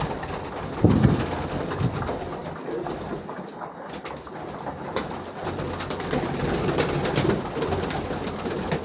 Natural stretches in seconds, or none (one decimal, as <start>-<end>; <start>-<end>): 0.0-1.0; 1.6-8.8